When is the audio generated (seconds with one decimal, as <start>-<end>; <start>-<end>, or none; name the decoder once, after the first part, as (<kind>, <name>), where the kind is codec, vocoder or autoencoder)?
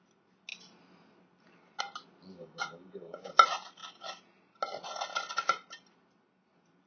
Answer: 2.4-3.3 (codec, DAC)